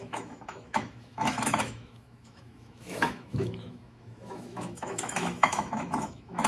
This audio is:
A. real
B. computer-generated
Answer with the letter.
B